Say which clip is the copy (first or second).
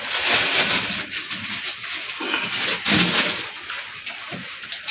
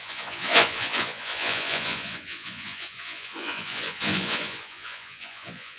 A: second